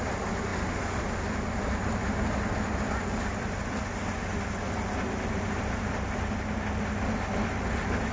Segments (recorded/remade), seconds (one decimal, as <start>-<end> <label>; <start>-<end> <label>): 0.0-8.1 recorded